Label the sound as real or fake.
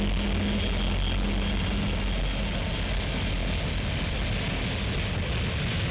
real